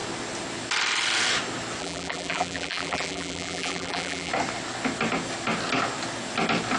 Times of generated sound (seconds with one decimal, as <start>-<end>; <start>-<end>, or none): 1.8-4.3